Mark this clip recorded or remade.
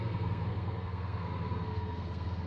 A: remade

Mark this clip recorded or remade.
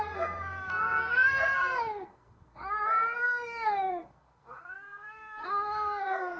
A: remade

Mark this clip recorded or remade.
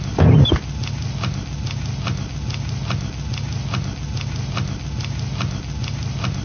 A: recorded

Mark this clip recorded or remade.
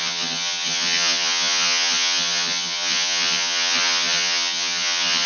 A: remade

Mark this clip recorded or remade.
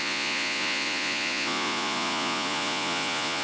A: remade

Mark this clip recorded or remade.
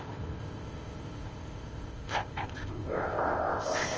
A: remade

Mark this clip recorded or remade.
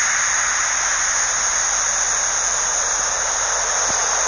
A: recorded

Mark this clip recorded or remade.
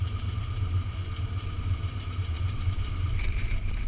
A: remade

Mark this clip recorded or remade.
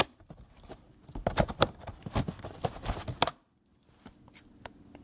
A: recorded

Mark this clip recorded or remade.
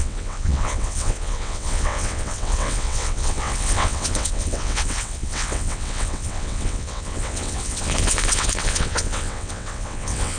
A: remade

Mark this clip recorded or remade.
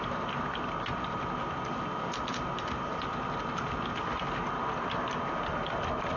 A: recorded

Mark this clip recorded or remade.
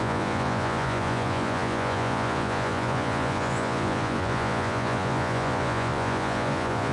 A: remade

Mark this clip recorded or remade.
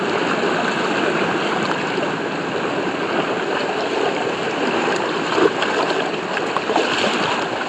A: recorded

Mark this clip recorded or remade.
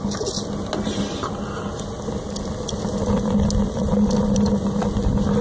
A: recorded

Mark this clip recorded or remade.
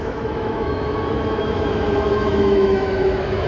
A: remade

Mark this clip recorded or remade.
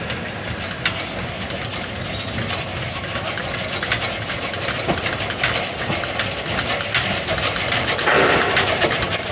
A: recorded